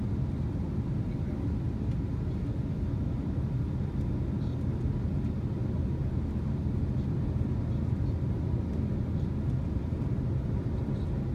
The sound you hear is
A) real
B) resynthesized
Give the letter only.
A